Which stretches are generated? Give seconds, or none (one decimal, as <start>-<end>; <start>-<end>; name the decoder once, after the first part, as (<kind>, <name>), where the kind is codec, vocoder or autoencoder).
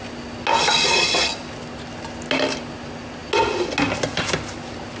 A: none